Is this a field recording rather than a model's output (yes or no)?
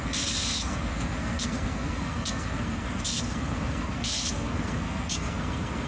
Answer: no